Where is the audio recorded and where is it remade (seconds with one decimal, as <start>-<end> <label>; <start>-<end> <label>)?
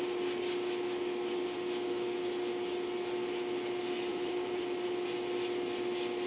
0.0-4.1 recorded; 4.1-4.6 remade; 4.6-6.3 recorded